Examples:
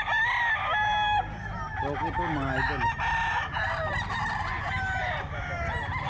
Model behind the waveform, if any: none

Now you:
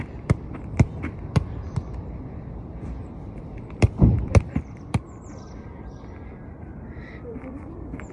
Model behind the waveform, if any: vocoder, BigVGAN v2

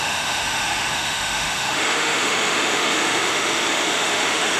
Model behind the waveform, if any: autoencoder, DAC-VAE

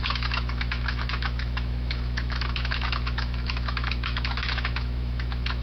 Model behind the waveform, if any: autoencoder, DAC-VAE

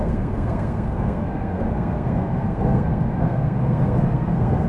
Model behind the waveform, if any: codec, SNAC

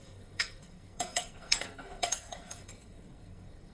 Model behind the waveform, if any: codec, SNAC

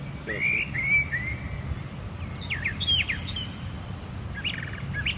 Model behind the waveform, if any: none